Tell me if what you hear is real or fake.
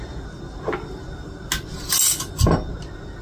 real